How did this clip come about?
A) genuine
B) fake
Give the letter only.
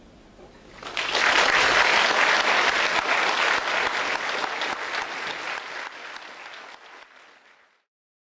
A